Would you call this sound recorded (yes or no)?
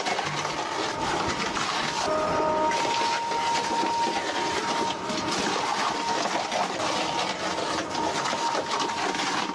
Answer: yes